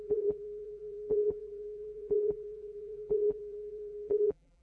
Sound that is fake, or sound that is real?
fake